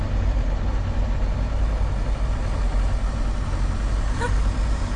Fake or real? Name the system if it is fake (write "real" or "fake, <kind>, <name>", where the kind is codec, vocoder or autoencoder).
real